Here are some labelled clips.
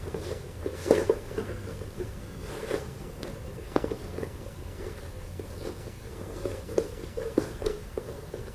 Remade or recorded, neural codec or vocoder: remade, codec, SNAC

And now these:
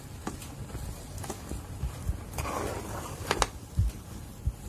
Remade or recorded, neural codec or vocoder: recorded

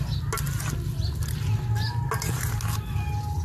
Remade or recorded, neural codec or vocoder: recorded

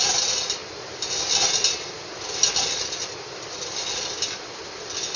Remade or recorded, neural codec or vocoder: recorded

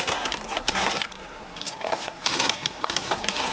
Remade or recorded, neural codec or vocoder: remade, codec, SNAC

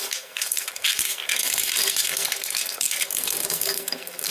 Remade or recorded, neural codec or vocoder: remade, codec, SNAC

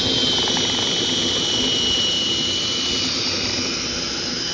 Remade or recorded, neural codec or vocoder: recorded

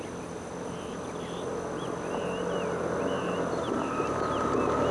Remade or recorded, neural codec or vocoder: recorded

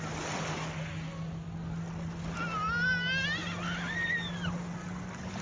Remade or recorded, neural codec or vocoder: recorded